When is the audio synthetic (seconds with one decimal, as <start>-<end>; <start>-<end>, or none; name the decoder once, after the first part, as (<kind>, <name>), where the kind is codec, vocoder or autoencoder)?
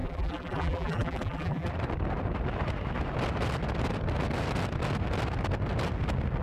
0.0-1.7 (vocoder, BigVGAN v2)